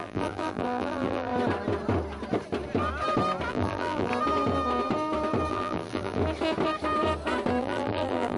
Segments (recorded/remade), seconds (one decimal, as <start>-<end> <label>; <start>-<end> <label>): 0.0-1.3 remade; 1.3-3.5 recorded; 3.5-4.1 remade; 4.1-5.5 recorded; 5.5-6.2 remade; 6.2-7.6 recorded; 7.6-8.4 remade